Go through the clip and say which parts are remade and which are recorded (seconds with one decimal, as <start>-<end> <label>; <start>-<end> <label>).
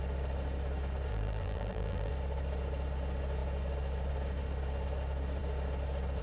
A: 0.0-1.1 recorded; 1.1-2.1 remade; 2.1-6.2 recorded